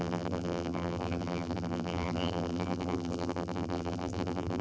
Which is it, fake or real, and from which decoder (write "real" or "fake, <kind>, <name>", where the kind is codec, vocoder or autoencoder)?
fake, vocoder, BigVGAN v2